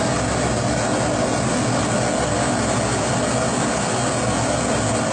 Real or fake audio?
real